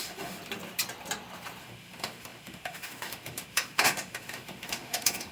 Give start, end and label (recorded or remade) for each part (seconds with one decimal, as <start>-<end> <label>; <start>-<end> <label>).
0.0-0.4 remade; 0.4-1.6 recorded; 1.6-5.3 remade